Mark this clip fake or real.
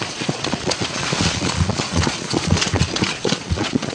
fake